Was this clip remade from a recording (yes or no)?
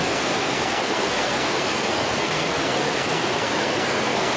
yes